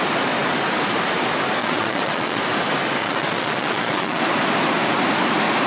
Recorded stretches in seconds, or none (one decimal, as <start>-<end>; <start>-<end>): 0.0-1.6; 2.4-3.0; 4.2-5.7